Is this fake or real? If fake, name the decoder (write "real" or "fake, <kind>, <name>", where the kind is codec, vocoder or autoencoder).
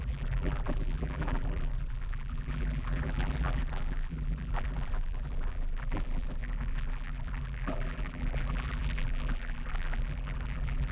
fake, vocoder, BigVGAN v2